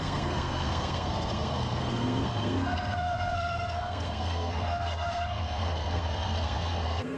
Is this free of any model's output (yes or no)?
no